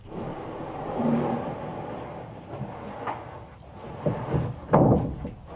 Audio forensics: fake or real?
real